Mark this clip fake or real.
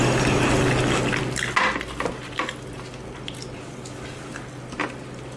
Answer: real